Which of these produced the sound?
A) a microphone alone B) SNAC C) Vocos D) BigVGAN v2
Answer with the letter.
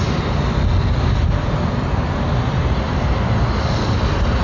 A